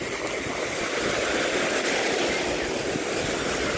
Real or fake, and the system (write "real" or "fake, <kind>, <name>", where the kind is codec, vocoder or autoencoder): real